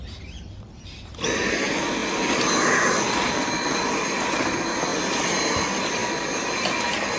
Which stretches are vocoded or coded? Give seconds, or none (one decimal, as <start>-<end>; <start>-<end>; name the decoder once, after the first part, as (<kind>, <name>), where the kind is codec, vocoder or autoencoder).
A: 0.0-4.9 (vocoder, BigVGAN v2); 5.5-6.0; 6.8-7.2